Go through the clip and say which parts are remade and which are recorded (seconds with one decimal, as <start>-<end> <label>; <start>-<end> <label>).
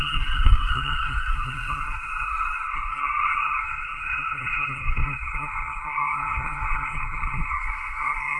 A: 0.0-8.4 remade